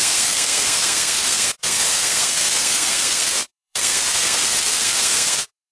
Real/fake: fake